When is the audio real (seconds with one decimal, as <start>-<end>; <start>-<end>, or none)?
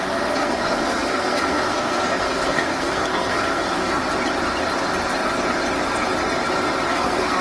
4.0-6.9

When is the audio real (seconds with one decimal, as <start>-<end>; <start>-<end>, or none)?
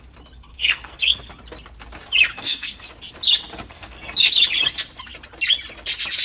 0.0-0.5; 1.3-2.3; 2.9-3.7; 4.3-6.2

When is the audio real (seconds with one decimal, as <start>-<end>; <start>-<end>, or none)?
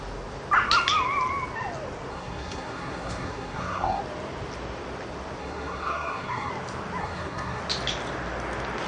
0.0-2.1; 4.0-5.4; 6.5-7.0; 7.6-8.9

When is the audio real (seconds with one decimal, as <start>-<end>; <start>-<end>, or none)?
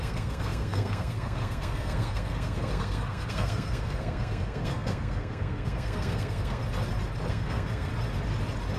6.6-7.3; 7.9-8.8